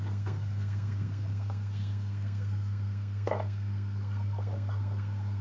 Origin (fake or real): fake